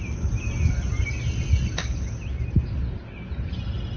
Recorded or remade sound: recorded